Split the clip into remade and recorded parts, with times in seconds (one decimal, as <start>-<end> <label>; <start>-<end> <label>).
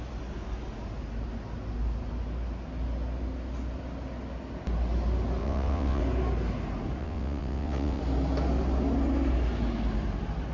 0.0-5.4 recorded; 5.4-6.0 remade; 6.0-7.0 recorded; 7.0-8.0 remade; 8.0-10.5 recorded